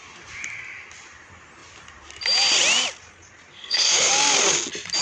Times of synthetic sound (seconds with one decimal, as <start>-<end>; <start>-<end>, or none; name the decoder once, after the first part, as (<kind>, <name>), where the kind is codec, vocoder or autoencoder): 3.5-4.1 (codec, SNAC)